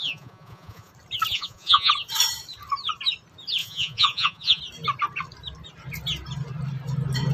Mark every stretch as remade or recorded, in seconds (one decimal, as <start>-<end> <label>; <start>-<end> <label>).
0.0-0.9 remade; 0.9-1.3 recorded; 1.3-1.9 remade; 1.9-3.6 recorded; 3.6-4.6 remade; 4.6-7.3 recorded